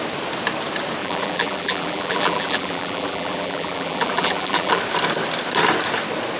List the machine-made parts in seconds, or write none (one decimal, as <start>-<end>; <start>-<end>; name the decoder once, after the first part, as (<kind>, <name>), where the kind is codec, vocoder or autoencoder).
1.0-4.8 (vocoder, BigVGAN v2)